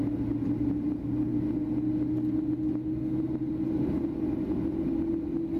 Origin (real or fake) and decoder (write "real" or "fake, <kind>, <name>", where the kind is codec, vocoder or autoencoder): real